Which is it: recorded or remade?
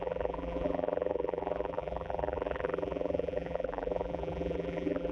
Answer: remade